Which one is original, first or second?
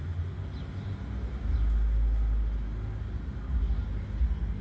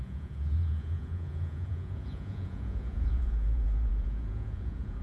first